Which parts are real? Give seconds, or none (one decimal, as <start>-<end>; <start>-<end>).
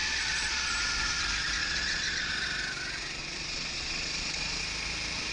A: 0.7-1.6; 2.3-3.2; 4.6-5.3